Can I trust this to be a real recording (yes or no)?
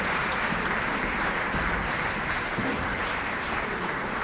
no